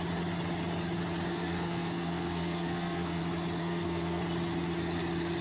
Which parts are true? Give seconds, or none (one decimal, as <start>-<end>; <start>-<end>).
0.0-1.3; 3.2-3.6; 4.2-5.4